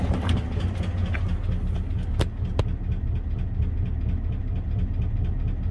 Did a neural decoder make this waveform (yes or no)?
no